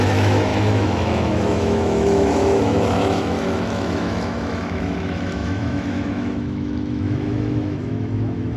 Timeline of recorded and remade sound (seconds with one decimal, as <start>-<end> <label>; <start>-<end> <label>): 0.0-8.6 remade